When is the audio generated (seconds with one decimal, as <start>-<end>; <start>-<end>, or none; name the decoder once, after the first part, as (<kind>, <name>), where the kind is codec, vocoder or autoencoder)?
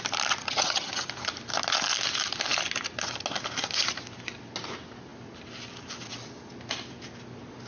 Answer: 0.4-1.1 (vocoder, HiFi-GAN)